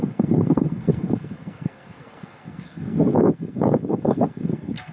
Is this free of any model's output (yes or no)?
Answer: no